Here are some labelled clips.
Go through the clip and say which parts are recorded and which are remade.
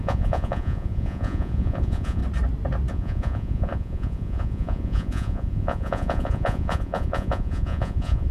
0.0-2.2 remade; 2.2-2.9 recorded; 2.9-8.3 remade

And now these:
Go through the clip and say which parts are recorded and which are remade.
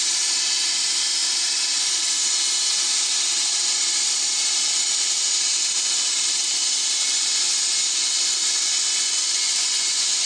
0.0-8.7 recorded; 8.7-10.3 remade